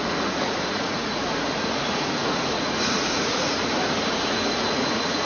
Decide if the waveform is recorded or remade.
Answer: remade